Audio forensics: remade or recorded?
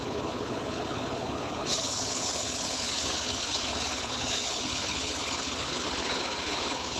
remade